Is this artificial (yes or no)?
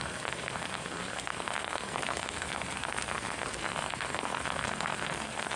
yes